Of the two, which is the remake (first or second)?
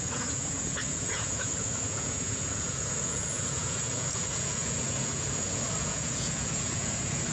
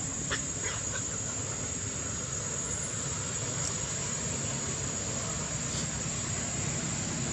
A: first